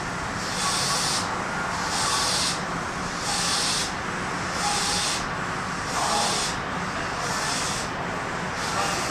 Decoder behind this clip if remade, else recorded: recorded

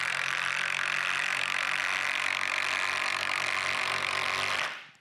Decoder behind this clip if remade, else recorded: remade, vocoder, BigVGAN v2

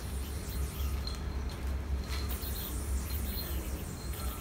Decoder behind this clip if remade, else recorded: recorded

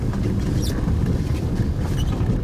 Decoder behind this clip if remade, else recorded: recorded